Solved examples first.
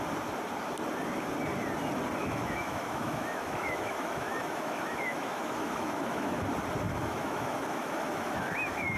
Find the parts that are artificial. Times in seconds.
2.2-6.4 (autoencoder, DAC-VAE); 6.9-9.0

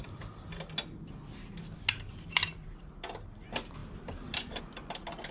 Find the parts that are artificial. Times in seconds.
none